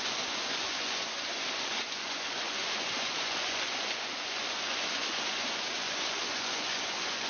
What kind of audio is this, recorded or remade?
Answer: remade